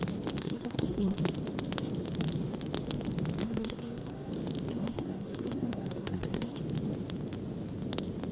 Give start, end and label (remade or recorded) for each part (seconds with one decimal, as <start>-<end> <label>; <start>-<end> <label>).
0.0-0.4 recorded; 0.4-1.2 remade; 1.2-3.4 recorded; 3.4-4.3 remade; 4.3-4.7 recorded; 4.7-6.6 remade; 6.6-8.3 recorded